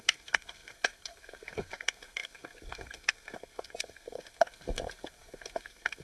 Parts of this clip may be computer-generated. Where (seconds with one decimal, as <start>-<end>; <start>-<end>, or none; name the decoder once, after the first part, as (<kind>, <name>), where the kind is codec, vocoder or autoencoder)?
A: 0.0-6.0 (codec, SNAC)